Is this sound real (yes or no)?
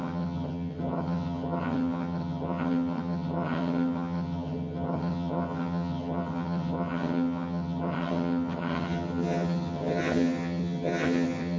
no